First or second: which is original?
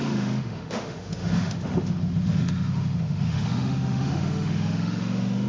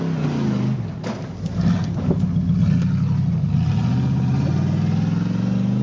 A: second